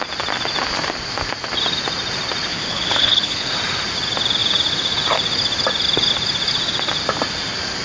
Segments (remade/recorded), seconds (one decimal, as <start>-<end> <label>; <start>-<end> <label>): 0.0-2.5 recorded; 2.5-3.5 remade; 3.5-7.8 recorded